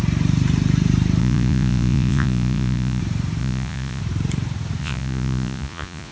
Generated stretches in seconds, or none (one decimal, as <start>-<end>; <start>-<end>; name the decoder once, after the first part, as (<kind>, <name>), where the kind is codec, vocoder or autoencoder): 1.2-3.0 (vocoder, Vocos); 3.4-4.0; 4.8-6.1